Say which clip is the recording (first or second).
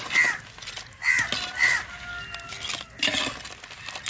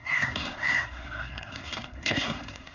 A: first